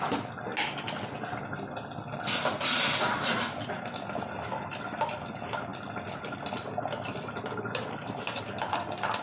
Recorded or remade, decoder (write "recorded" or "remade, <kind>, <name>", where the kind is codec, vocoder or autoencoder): recorded